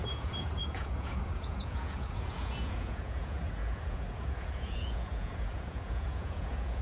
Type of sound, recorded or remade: remade